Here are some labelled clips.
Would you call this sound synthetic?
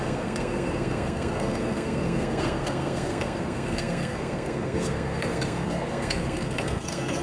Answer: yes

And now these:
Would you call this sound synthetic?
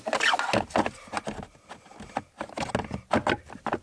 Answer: no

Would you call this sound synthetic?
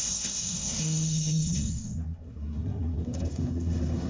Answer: yes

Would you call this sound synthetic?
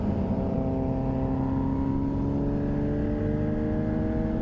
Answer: no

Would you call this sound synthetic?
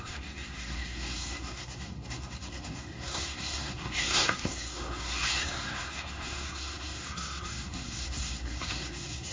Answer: yes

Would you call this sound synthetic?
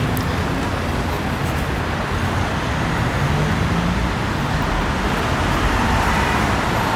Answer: no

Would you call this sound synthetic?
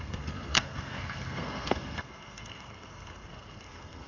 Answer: yes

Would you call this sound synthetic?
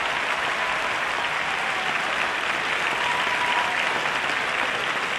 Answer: no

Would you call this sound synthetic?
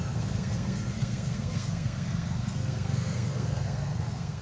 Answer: yes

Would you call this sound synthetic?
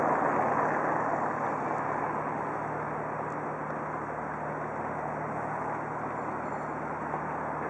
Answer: no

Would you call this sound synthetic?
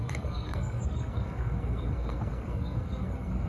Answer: yes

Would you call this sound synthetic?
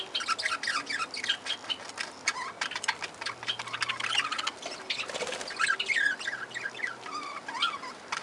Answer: no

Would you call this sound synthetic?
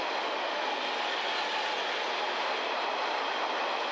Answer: no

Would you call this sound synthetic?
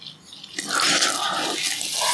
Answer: no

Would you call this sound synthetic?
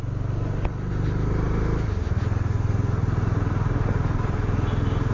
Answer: no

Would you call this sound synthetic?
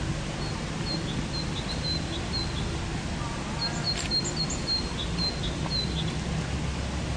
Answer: no